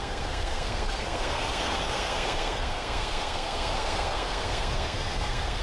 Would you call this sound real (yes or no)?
no